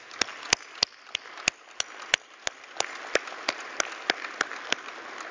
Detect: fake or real real